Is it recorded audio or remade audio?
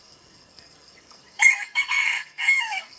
remade